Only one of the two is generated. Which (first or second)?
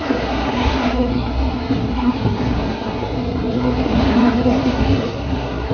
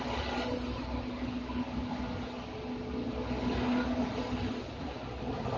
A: first